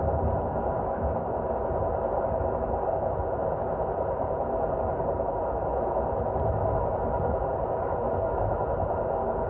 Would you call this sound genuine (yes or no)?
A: yes